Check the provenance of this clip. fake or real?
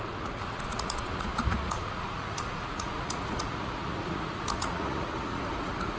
fake